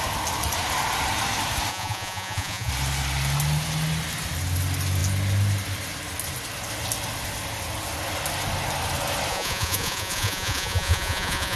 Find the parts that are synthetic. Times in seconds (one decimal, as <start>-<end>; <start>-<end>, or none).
1.7-2.7; 9.3-11.6

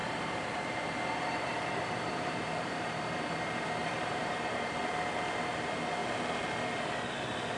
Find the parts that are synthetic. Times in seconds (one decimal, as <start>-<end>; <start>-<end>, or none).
0.0-3.4; 3.8-4.8

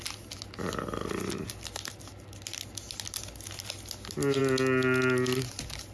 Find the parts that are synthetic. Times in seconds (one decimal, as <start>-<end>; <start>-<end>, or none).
none

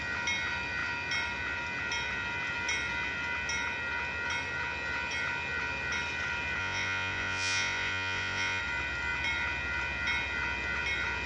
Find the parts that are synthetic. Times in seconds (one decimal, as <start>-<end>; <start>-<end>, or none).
6.6-8.6

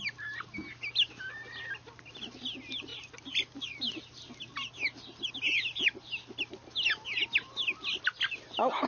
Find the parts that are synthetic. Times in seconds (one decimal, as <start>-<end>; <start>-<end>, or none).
none

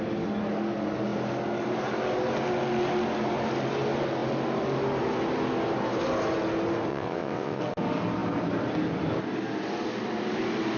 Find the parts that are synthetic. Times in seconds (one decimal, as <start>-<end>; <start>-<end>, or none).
6.9-7.6